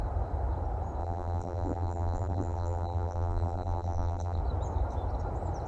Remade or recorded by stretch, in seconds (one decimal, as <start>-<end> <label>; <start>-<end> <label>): 0.0-1.0 recorded; 1.0-4.4 remade; 4.4-5.7 recorded